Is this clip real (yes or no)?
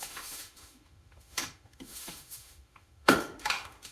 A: no